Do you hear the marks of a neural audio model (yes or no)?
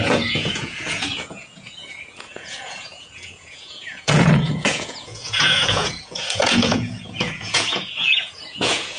yes